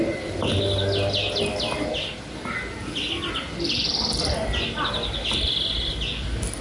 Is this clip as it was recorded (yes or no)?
yes